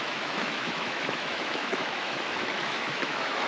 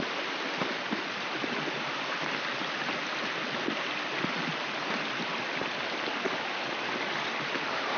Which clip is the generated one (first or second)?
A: first